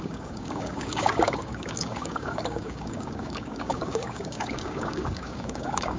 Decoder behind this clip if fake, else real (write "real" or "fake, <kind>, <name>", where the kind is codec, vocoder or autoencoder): fake, codec, DAC